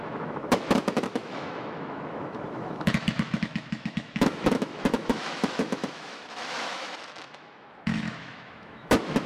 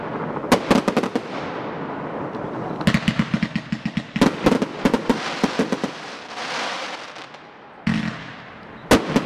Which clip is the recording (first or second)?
second